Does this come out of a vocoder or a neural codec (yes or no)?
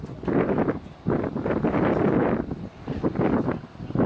no